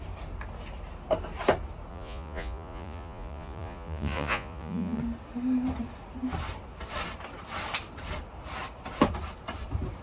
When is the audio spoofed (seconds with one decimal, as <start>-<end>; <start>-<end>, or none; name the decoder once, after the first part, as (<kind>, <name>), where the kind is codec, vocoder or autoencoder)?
1.9-5.0 (vocoder, Vocos)